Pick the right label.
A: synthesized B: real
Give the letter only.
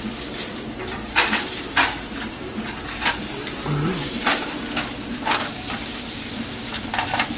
A